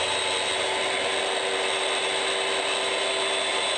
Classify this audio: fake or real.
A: real